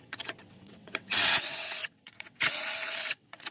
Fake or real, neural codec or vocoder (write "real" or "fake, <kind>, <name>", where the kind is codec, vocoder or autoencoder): fake, vocoder, WaveNeXt